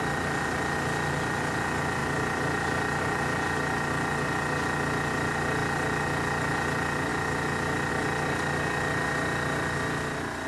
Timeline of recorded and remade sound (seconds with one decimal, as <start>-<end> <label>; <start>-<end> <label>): 0.0-10.5 recorded